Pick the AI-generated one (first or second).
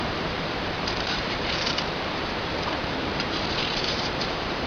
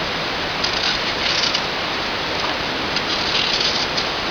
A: first